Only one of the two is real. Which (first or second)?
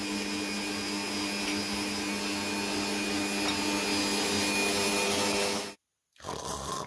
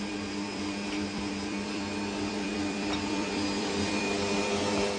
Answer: first